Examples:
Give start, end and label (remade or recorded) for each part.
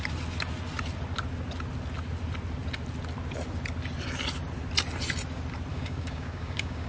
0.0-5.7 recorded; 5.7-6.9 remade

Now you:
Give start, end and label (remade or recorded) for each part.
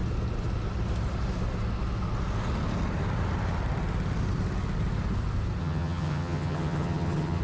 0.0-5.6 recorded; 5.6-7.4 remade